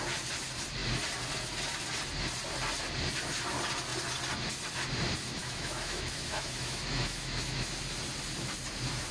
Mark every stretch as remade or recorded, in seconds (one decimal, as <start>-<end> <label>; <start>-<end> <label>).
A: 0.0-5.4 recorded; 5.4-7.7 remade; 7.7-9.1 recorded